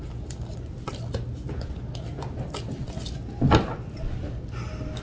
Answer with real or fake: real